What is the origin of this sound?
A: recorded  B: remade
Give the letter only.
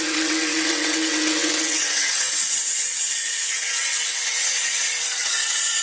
B